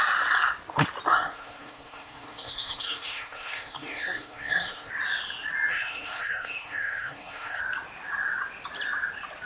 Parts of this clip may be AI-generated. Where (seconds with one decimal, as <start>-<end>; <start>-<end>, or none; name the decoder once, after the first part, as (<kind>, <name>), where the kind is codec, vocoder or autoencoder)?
1.1-4.9 (codec, SNAC); 5.7-7.6